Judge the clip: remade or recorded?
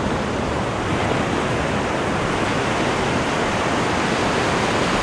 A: recorded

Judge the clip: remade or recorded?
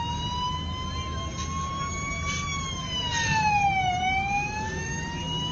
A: recorded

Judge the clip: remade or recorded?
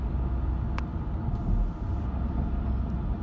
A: recorded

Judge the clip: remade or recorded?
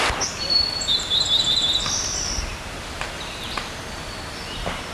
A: recorded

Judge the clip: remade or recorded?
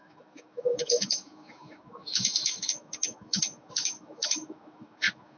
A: remade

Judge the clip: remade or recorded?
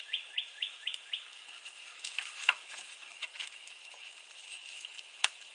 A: remade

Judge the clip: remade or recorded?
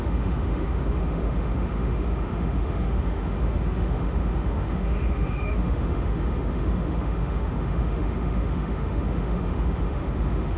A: remade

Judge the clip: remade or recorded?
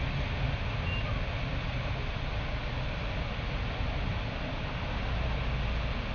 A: recorded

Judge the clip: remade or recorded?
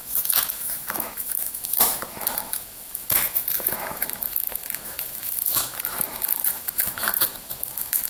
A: remade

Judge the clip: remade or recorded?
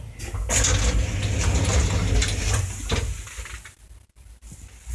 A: recorded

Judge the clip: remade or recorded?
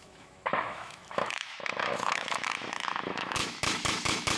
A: remade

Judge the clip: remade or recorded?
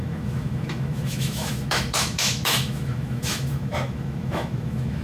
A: remade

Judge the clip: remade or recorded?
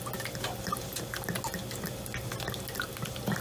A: recorded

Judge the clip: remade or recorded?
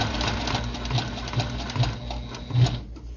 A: recorded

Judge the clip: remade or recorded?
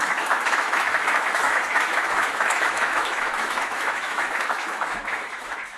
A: remade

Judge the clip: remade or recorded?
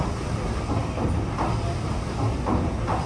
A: recorded